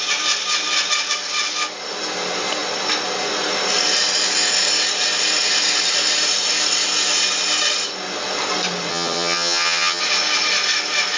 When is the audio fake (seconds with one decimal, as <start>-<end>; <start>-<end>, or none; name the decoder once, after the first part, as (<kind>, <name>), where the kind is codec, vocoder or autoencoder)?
8.9-10.0 (vocoder, HiFi-GAN)